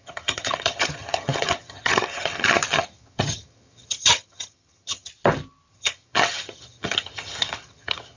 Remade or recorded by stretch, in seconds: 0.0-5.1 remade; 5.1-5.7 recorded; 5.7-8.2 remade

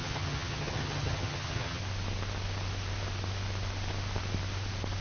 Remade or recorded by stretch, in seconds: 0.0-1.8 remade; 1.8-5.0 recorded

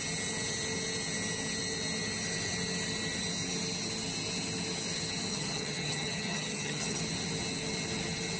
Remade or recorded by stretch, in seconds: 0.0-5.3 recorded; 5.3-7.0 remade; 7.0-8.4 recorded

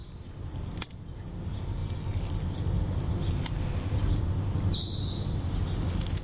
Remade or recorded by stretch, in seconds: 0.0-6.2 recorded

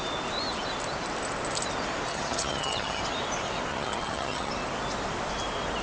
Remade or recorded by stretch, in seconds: 0.0-2.1 recorded; 2.1-3.0 remade; 3.0-3.7 recorded; 3.7-4.5 remade; 4.5-5.8 recorded

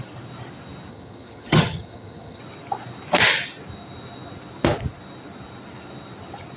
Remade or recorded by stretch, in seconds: 0.0-0.9 recorded; 0.9-2.4 remade; 2.4-6.6 recorded

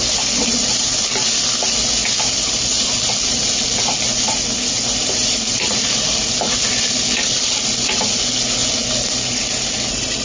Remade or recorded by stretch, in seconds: 0.0-10.2 recorded

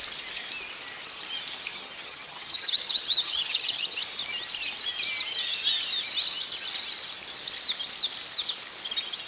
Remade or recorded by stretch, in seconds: 0.0-1.7 recorded; 1.7-4.0 remade; 4.0-9.3 recorded